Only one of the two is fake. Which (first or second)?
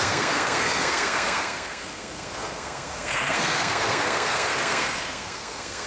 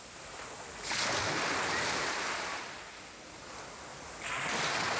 first